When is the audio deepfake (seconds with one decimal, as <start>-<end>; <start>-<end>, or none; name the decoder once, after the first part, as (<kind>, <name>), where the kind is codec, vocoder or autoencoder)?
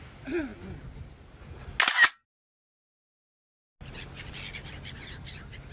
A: none